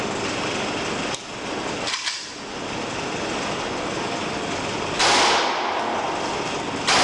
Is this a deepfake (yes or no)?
no